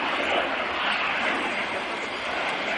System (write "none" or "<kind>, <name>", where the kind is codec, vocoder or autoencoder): none